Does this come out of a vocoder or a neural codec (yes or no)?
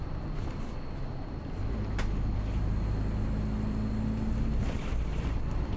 no